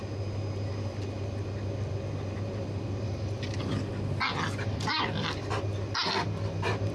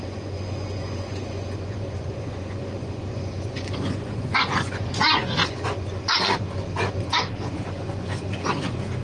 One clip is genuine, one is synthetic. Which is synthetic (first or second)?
second